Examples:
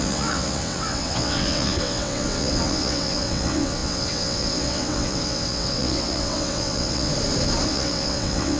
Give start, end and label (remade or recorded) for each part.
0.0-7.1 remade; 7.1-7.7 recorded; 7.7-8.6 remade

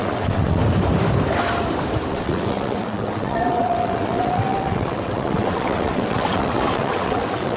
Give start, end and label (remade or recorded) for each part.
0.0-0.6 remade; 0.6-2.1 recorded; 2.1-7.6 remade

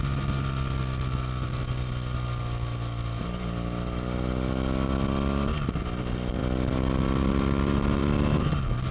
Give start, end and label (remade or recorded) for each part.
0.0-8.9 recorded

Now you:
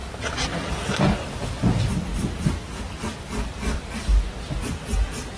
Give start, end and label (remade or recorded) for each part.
0.0-0.7 remade; 0.7-2.1 recorded; 2.1-4.8 remade; 4.8-5.4 recorded

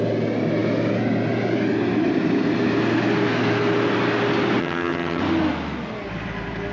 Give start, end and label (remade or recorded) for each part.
0.0-4.6 recorded; 4.6-5.2 remade; 5.2-6.7 recorded

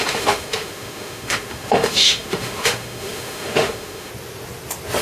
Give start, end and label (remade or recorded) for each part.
0.0-4.1 remade; 4.1-5.0 recorded